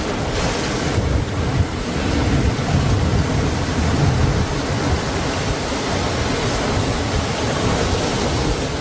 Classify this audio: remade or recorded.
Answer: recorded